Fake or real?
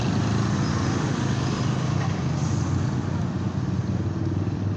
real